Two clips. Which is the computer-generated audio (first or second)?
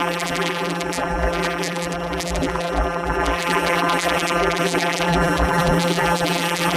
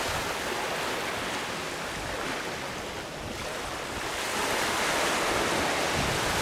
first